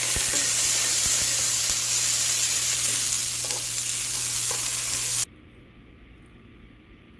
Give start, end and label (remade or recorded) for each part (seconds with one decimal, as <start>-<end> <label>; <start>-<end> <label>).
0.0-7.2 recorded